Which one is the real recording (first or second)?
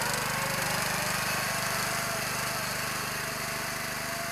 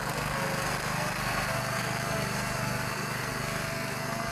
first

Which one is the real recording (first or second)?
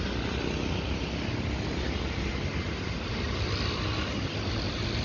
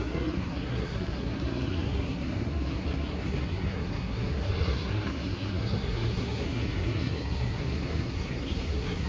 first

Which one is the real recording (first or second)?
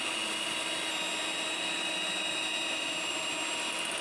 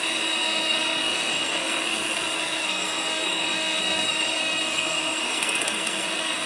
first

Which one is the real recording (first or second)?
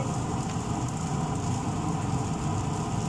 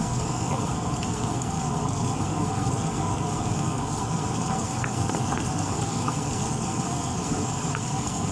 first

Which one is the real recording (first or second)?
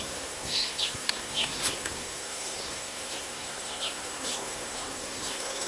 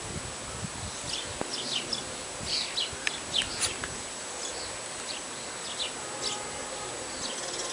second